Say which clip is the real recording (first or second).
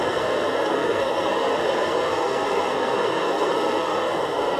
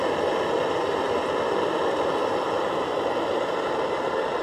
second